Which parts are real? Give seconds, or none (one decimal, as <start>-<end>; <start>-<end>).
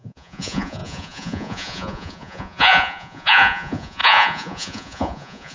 none